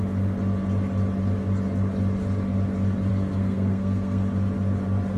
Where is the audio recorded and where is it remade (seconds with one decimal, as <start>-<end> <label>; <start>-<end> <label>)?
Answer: 0.0-3.1 recorded; 3.1-4.3 remade; 4.3-5.2 recorded